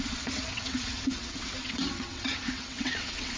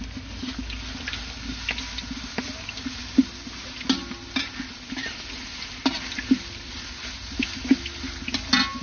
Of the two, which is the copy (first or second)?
first